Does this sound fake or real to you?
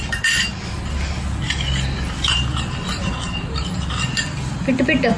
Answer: real